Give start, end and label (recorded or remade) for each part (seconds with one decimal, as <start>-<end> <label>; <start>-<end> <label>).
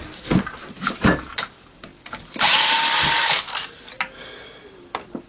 0.0-5.3 recorded